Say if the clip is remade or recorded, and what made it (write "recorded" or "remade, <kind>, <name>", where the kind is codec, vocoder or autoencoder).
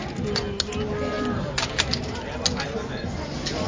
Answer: recorded